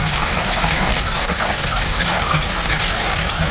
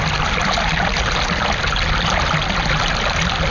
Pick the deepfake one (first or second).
first